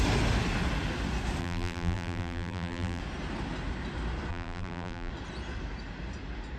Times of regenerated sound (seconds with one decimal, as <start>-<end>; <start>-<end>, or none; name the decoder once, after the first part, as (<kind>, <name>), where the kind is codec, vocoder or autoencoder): 1.4-3.0 (vocoder, BigVGAN v2); 4.3-5.1